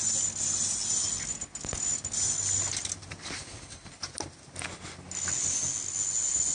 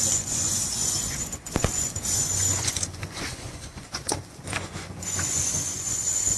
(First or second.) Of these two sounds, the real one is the first